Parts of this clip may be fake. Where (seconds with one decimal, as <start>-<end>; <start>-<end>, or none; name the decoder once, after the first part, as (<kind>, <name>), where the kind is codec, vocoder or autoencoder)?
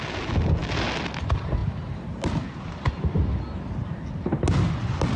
none